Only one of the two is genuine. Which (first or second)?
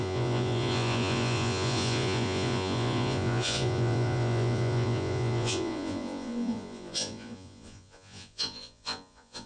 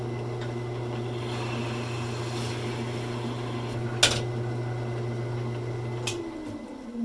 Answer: second